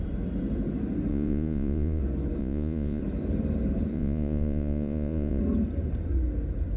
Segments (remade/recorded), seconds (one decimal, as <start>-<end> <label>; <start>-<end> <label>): 0.0-1.1 recorded; 1.1-2.0 remade; 2.0-2.4 recorded; 2.4-3.0 remade; 3.0-3.9 recorded; 3.9-5.4 remade; 5.4-6.8 recorded